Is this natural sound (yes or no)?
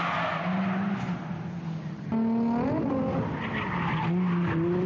yes